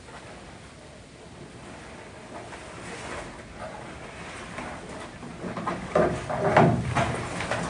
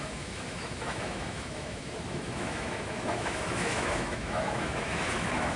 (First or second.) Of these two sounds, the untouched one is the first